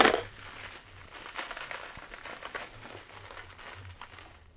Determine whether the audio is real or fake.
real